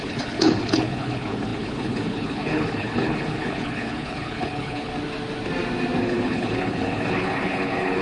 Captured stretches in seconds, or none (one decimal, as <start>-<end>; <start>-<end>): 4.9-6.0